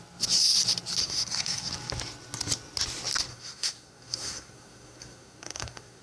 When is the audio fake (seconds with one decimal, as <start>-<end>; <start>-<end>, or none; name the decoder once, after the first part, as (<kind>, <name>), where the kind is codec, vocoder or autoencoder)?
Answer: 1.0-1.7 (codec, SNAC); 3.3-6.0